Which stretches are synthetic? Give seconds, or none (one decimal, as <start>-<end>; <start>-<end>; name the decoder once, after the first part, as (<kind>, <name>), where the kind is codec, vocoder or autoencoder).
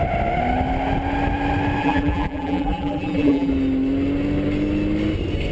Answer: 1.8-3.5 (vocoder, BigVGAN v2)